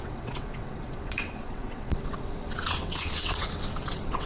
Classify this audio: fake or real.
fake